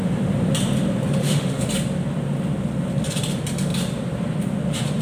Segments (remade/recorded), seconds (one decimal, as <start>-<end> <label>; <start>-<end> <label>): 0.0-1.2 recorded; 1.2-1.7 remade; 1.7-5.0 recorded